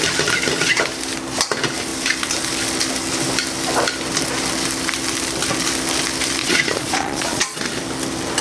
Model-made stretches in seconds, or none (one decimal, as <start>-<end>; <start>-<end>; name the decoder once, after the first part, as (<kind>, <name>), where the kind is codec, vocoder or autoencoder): 6.4-7.6 (vocoder, Vocos)